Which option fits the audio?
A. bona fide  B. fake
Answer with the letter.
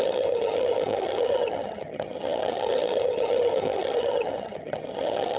B